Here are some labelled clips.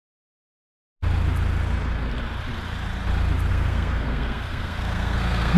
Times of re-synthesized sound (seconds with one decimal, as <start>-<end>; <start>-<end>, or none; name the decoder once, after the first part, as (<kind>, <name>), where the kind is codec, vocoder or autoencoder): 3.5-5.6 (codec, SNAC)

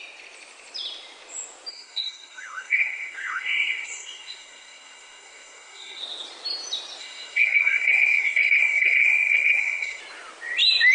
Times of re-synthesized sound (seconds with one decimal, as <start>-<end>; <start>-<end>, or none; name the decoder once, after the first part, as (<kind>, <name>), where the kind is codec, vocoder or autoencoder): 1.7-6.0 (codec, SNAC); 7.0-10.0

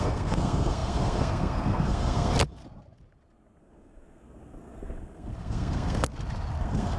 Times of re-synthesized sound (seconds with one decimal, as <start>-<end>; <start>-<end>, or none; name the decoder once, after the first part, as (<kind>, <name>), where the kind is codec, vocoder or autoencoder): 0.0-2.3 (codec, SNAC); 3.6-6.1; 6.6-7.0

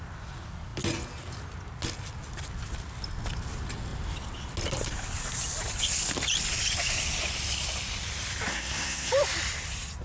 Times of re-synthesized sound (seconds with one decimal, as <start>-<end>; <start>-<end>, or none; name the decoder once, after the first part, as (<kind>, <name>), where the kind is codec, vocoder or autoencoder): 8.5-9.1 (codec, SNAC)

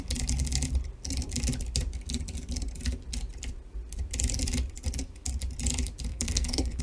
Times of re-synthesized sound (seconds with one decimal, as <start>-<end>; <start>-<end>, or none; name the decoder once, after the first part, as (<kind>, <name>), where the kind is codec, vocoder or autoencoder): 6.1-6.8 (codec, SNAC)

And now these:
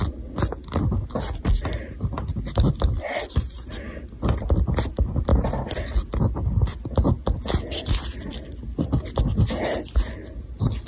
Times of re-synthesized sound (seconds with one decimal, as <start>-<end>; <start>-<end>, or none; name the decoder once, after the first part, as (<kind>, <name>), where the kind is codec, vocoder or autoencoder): none